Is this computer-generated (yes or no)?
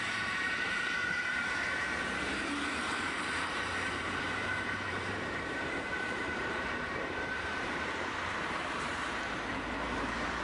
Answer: yes